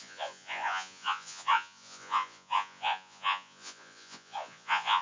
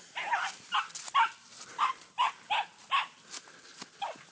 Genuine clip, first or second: second